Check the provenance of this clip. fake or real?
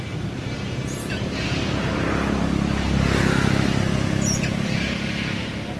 real